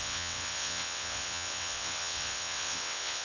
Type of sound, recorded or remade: remade